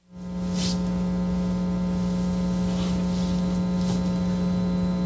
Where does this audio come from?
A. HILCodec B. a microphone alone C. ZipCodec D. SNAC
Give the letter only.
B